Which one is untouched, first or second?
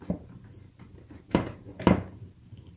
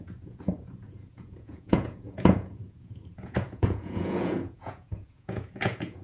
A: first